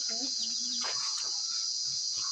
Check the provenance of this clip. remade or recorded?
remade